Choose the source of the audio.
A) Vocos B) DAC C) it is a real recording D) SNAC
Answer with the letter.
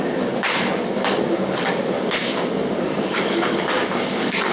B